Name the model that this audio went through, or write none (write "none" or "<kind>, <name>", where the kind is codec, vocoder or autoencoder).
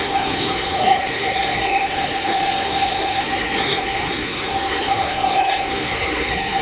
codec, SNAC